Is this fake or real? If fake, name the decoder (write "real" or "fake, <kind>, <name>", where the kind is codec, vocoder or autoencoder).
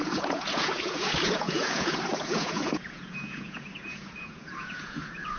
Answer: fake, vocoder, Vocos